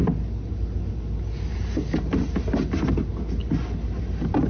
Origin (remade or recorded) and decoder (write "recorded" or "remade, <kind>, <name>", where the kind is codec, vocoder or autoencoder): recorded